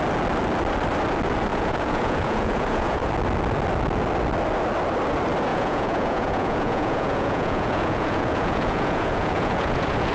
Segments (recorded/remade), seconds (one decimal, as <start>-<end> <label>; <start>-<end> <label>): 0.0-1.5 recorded; 1.5-3.1 remade; 3.1-5.5 recorded; 5.5-10.1 remade